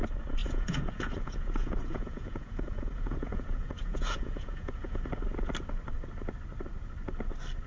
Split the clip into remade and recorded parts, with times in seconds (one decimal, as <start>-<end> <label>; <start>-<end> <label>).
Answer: 0.0-0.4 recorded; 0.4-5.0 remade; 5.0-7.7 recorded